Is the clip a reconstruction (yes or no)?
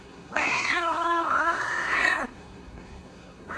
yes